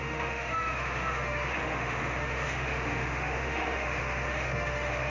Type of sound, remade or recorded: remade